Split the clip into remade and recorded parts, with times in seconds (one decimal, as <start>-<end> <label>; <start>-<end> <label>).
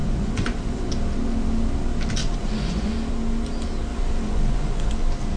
0.0-0.9 remade; 0.9-2.2 recorded; 2.2-2.9 remade; 2.9-3.9 recorded; 3.9-4.9 remade; 4.9-5.4 recorded